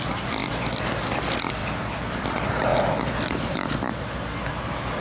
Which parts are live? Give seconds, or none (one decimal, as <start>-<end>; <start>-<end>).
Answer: 0.0-5.0